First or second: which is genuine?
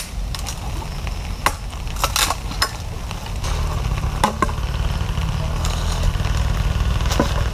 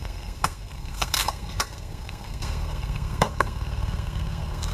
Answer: first